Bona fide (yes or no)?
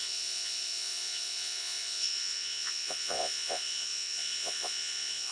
no